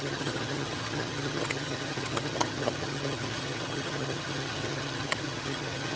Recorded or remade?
remade